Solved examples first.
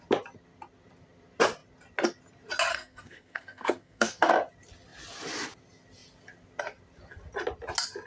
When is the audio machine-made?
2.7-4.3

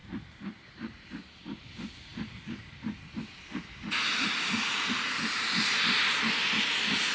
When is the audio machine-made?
none

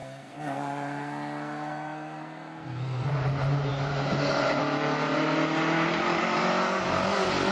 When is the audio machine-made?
0.0-3.1